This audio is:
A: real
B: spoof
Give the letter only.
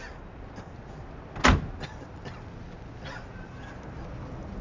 A